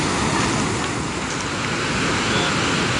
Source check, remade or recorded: recorded